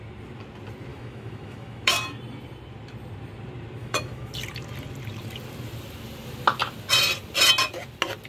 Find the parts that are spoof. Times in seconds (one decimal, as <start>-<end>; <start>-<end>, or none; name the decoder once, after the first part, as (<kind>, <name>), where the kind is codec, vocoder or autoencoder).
0.9-2.2 (autoencoder, DAC-VAE); 3.8-4.3